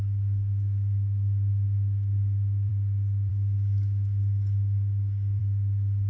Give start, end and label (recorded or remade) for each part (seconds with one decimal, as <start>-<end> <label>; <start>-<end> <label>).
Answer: 0.0-2.7 remade; 2.7-3.3 recorded; 3.3-5.4 remade; 5.4-6.1 recorded